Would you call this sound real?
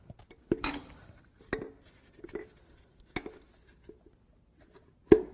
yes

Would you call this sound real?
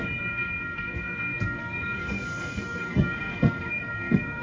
no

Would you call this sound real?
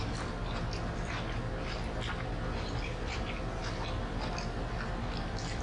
yes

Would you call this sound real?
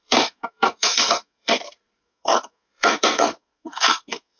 no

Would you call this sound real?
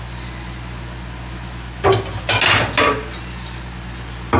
yes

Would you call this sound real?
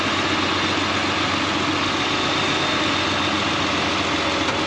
yes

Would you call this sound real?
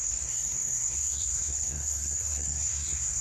no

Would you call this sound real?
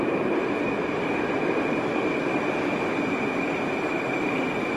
yes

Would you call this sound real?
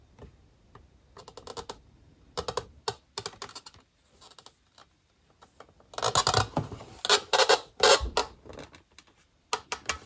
yes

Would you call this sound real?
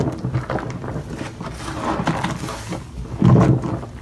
yes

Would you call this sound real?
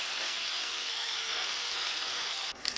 no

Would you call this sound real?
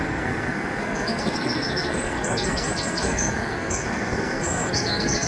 no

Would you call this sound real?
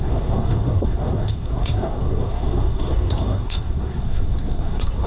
no